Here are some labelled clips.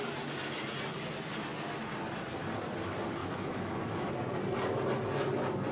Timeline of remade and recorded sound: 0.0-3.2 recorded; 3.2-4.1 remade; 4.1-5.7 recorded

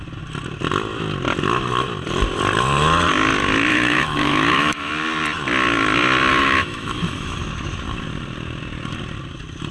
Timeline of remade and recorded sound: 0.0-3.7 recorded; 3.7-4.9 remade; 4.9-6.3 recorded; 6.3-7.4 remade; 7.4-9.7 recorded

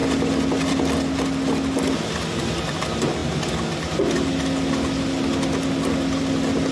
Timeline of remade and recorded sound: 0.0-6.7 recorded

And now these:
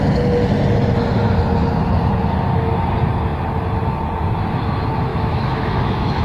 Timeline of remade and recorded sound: 0.0-5.1 recorded; 5.1-6.2 remade

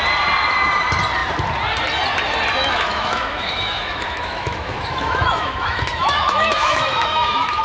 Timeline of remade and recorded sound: 0.0-2.6 recorded; 2.6-7.6 remade

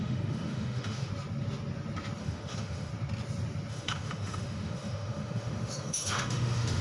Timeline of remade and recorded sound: 0.0-1.1 remade; 1.1-2.2 recorded; 2.2-2.9 remade; 2.9-3.7 recorded; 3.7-6.8 remade

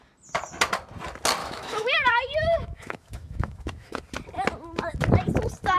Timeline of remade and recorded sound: 0.0-1.4 recorded; 1.4-4.0 remade; 4.0-5.8 recorded

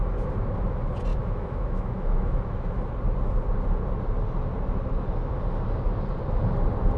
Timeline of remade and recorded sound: 0.0-1.1 recorded; 1.1-2.7 remade; 2.7-7.0 recorded